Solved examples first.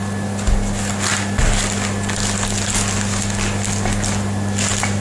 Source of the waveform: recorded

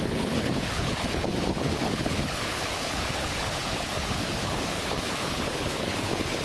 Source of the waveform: remade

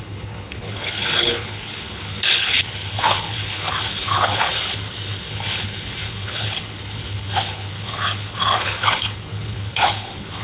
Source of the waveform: remade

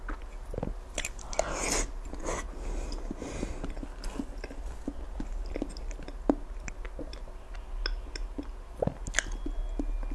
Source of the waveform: recorded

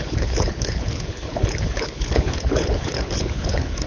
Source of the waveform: remade